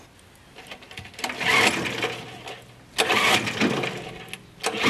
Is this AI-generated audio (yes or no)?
no